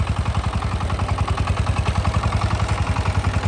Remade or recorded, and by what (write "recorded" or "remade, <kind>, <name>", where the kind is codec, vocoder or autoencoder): recorded